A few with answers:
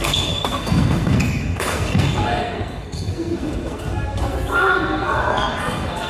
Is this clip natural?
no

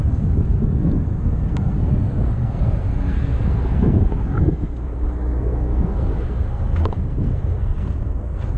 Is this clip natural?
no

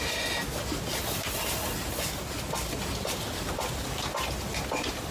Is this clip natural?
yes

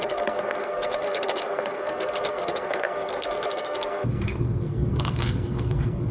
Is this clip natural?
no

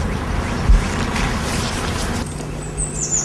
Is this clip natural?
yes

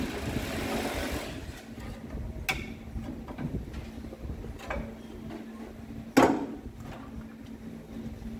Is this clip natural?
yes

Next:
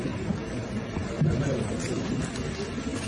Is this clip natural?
yes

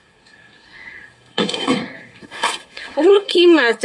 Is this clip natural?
no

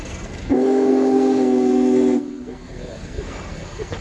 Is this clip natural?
no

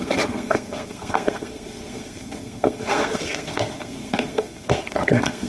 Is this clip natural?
no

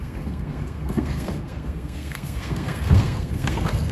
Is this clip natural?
no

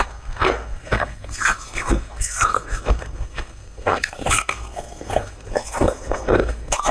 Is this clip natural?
no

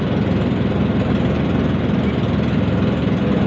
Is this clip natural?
yes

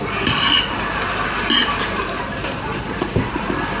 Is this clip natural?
yes